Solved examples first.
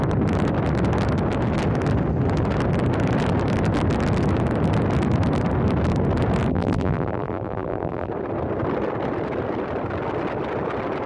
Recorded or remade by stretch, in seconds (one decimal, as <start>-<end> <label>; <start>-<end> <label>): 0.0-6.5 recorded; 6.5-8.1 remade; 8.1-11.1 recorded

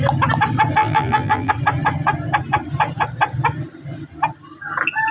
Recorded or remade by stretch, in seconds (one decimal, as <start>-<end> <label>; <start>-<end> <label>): 0.0-0.8 recorded; 0.8-1.5 remade; 1.5-5.1 recorded

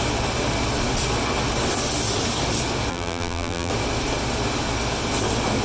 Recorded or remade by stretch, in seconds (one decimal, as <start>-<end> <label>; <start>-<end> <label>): 0.0-2.9 recorded; 2.9-3.7 remade; 3.7-5.6 recorded

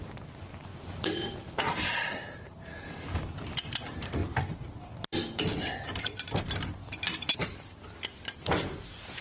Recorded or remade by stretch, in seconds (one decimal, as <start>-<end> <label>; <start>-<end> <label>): 0.0-4.2 remade; 4.2-6.0 recorded; 6.0-7.4 remade; 7.4-8.5 recorded; 8.5-9.2 remade

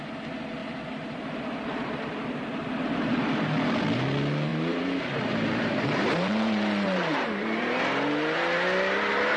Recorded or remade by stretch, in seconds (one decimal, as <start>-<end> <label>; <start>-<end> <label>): 0.0-4.5 recorded; 4.5-7.8 remade; 7.8-9.4 recorded

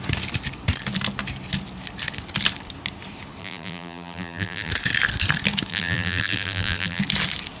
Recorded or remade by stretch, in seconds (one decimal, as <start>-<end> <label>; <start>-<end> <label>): 0.0-3.4 recorded; 3.4-4.7 remade; 4.7-5.7 recorded; 5.7-7.0 remade; 7.0-7.6 recorded